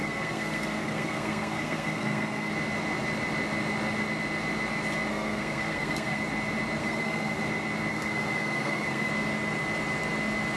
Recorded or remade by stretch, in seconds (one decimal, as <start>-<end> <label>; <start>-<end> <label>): 0.0-2.5 remade; 2.5-5.1 recorded; 5.1-6.2 remade; 6.2-6.8 recorded; 6.8-7.4 remade; 7.4-7.9 recorded; 7.9-9.1 remade; 9.1-10.6 recorded